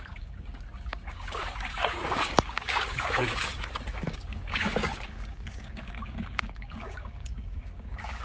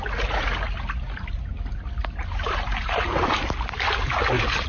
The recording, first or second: second